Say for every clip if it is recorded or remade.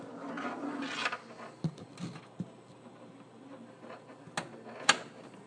recorded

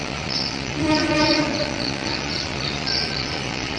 remade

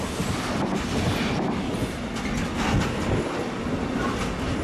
recorded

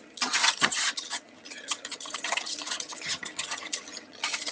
remade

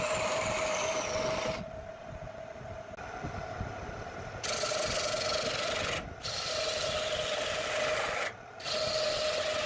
recorded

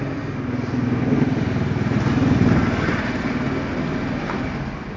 recorded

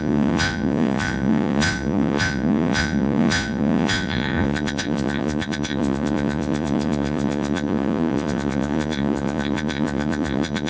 remade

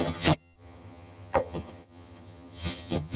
remade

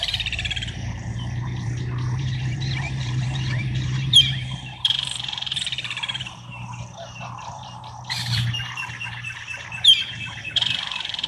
remade